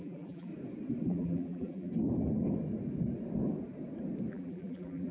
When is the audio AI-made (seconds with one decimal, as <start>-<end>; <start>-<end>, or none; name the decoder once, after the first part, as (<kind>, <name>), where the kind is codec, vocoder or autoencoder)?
0.0-0.5 (vocoder, BigVGAN v2); 1.1-1.9; 4.3-5.1